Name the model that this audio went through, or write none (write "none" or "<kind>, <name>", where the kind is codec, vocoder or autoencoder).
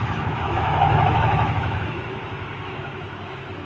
autoencoder, DAC-VAE